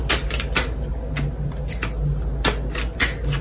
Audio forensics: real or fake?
real